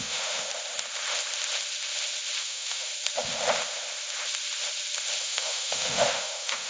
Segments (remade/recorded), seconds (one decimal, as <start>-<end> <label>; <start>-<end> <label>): 0.0-0.5 remade; 0.5-2.4 recorded; 2.4-2.9 remade; 2.9-5.2 recorded; 5.2-6.7 remade